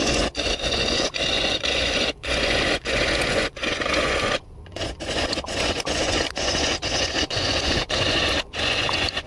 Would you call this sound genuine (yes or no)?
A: no